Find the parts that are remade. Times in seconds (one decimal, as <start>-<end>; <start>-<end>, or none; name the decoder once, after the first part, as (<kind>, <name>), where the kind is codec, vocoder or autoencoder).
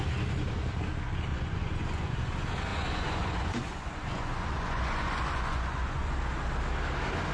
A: 1.3-2.3 (vocoder, Vocos); 2.7-6.1